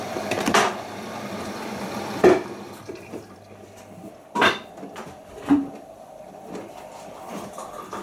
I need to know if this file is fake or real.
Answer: fake